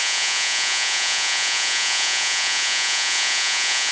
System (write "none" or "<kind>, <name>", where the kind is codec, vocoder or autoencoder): vocoder, Vocos